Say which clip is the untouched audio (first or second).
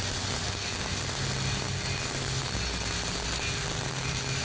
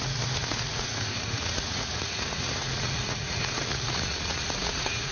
first